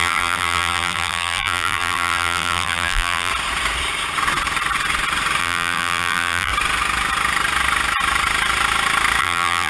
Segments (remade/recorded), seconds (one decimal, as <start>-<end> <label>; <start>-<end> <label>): 0.0-3.3 remade; 3.3-5.4 recorded; 5.4-6.5 remade; 6.5-9.2 recorded; 9.2-9.7 remade